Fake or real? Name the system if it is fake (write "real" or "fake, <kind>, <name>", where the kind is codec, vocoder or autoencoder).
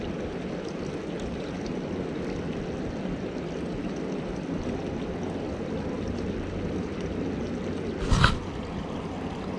real